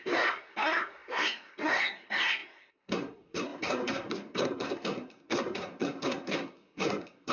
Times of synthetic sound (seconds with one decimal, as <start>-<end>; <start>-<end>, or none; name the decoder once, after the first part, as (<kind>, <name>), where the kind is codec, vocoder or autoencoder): 0.0-7.3 (codec, SNAC)